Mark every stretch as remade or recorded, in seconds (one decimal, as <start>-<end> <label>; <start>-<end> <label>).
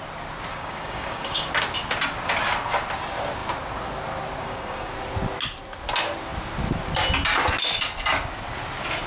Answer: 0.0-0.5 recorded; 0.5-1.5 remade; 1.5-4.4 recorded; 4.4-4.9 remade; 4.9-9.1 recorded